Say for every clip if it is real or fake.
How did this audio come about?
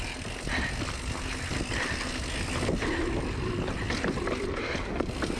real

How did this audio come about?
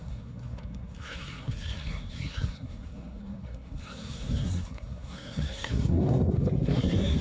fake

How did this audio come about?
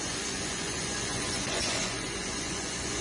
fake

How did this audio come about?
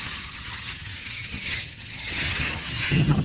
fake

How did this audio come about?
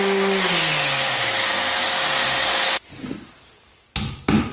real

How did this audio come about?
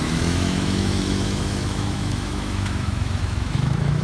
fake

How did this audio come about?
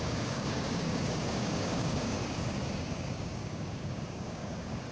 fake